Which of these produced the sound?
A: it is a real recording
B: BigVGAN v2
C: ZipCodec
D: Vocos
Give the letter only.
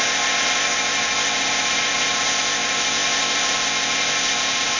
C